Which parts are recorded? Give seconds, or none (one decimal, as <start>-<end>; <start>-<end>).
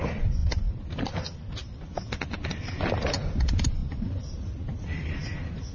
0.0-5.7